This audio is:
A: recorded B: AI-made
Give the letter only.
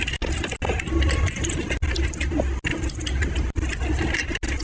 A